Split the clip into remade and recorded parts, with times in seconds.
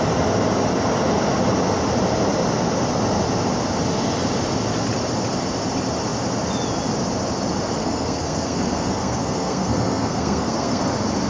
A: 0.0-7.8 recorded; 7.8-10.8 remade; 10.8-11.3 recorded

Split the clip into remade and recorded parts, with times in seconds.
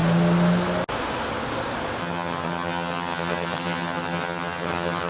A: 0.0-2.0 recorded; 2.0-5.1 remade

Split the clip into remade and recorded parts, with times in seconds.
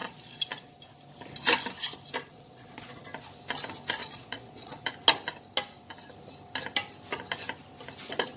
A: 0.0-0.7 remade; 0.7-2.3 recorded; 2.3-3.0 remade; 3.0-4.0 recorded; 4.0-4.9 remade; 4.9-8.4 recorded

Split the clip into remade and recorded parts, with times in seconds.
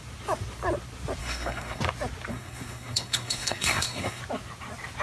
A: 0.0-1.2 recorded; 1.2-1.8 remade; 1.8-2.3 recorded; 2.3-4.2 remade; 4.2-5.0 recorded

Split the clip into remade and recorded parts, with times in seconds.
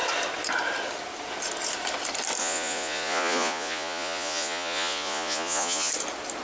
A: 0.0-2.4 recorded; 2.4-5.9 remade; 5.9-6.4 recorded